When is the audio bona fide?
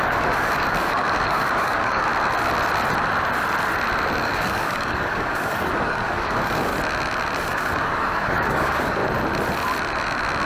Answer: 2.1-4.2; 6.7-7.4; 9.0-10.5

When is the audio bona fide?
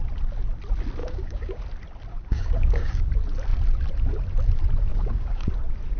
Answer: 0.0-1.0; 1.6-2.1; 3.1-4.9; 5.5-6.0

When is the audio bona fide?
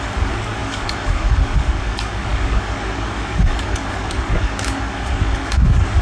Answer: none